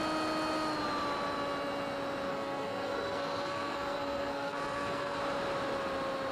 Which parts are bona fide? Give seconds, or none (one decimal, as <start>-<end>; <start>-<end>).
0.0-2.3; 5.2-6.3